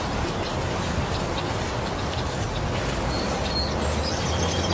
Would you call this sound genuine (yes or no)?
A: yes